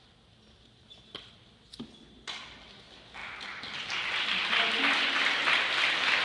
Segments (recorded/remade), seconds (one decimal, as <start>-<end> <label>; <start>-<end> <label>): 0.0-6.2 recorded